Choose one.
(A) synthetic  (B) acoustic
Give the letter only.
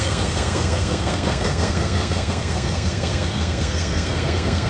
A